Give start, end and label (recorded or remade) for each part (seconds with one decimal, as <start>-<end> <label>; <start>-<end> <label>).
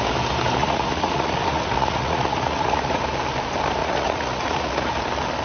0.0-0.6 recorded; 0.6-3.0 remade; 3.0-3.8 recorded; 3.8-5.0 remade; 5.0-5.4 recorded